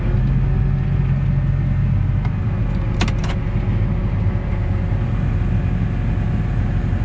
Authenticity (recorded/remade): recorded